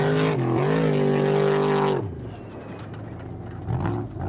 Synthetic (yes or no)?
no